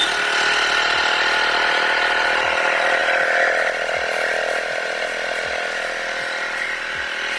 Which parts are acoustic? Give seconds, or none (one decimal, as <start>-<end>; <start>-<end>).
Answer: 0.0-7.4